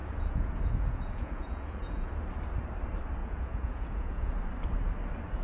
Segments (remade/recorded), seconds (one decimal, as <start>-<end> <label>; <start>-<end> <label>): 0.0-2.1 remade; 2.1-3.2 recorded; 3.2-4.3 remade; 4.3-5.4 recorded